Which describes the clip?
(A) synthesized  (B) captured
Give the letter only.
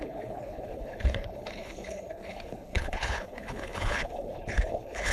A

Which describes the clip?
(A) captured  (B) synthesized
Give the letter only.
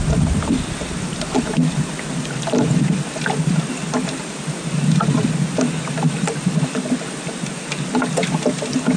B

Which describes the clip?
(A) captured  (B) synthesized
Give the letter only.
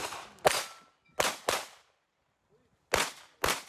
A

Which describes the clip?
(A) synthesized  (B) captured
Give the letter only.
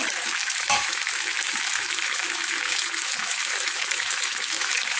A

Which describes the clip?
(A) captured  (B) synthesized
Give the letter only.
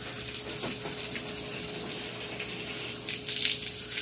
A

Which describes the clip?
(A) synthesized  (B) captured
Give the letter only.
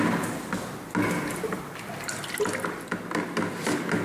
B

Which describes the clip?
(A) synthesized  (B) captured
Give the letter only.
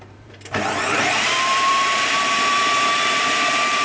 A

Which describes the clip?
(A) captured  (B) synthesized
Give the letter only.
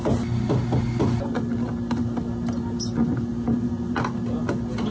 A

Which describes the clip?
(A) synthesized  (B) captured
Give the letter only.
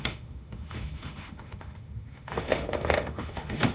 A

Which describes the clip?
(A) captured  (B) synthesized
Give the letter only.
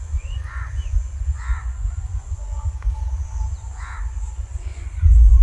B